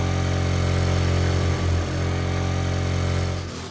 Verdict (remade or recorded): recorded